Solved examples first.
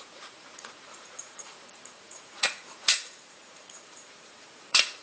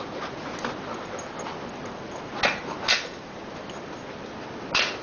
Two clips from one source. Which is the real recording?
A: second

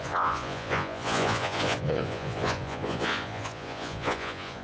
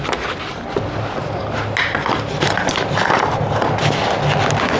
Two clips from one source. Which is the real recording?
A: second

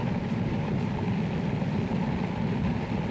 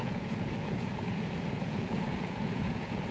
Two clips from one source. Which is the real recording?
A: first